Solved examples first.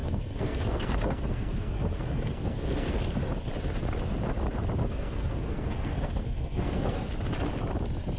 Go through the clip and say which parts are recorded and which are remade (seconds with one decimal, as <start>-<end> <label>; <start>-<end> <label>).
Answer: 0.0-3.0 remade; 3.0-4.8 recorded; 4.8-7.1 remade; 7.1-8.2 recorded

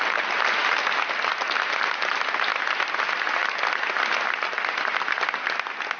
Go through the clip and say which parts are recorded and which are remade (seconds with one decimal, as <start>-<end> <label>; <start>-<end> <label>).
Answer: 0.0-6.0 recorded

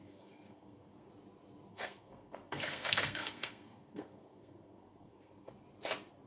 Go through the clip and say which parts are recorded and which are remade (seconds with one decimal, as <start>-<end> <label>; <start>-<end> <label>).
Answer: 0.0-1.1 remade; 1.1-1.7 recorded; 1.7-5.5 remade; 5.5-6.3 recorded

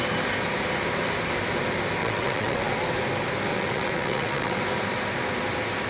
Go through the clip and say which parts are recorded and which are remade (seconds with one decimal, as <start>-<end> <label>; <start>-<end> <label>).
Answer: 0.0-2.0 recorded; 2.0-2.7 remade; 2.7-3.5 recorded; 3.5-4.6 remade; 4.6-5.9 recorded

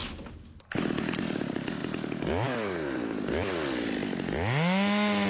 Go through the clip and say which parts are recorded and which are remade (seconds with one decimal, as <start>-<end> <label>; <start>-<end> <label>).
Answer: 0.0-5.3 recorded

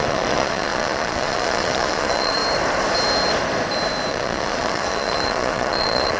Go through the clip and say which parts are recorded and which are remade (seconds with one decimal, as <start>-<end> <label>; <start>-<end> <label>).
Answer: 0.0-2.4 remade; 2.4-4.1 recorded; 4.1-6.2 remade

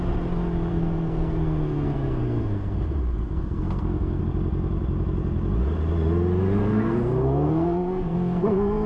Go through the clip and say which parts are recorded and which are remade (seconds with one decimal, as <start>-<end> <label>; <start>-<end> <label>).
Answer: 0.0-0.7 recorded; 0.7-4.2 remade; 4.2-6.6 recorded; 6.6-8.9 remade

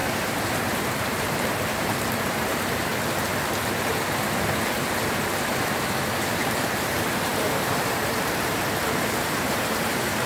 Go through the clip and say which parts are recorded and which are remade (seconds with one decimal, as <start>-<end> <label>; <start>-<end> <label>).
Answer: 0.0-2.9 remade; 2.9-5.5 recorded; 5.5-10.3 remade